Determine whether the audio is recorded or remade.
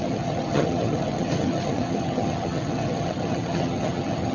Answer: remade